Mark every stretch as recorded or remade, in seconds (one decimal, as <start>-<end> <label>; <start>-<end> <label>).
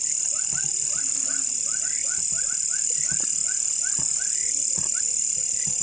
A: 0.0-5.8 recorded